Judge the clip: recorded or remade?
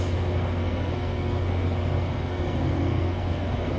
remade